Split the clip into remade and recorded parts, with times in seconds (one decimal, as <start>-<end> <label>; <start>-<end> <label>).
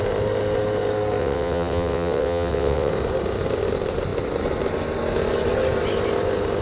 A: 0.0-1.2 recorded; 1.2-2.9 remade; 2.9-6.6 recorded